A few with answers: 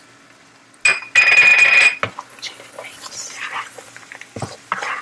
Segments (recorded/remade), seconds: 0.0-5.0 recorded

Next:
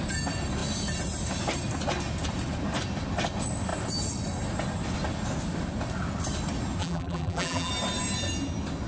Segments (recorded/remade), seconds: 0.0-6.8 recorded; 6.8-7.7 remade; 7.7-8.9 recorded

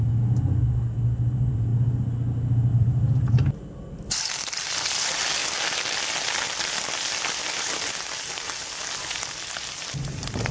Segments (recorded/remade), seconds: 0.0-2.7 recorded; 2.7-3.3 remade; 3.3-7.4 recorded; 7.4-7.9 remade; 7.9-10.5 recorded

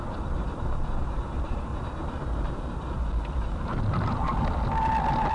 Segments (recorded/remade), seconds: 0.0-1.7 remade; 1.7-5.3 recorded